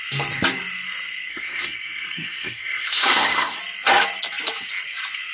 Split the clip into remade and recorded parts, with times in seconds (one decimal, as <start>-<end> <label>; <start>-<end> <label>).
0.0-1.3 recorded; 1.3-3.6 remade; 3.6-5.3 recorded